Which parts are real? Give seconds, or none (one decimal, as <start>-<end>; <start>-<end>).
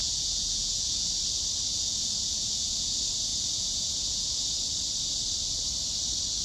1.1-1.7; 2.9-3.3; 4.6-6.4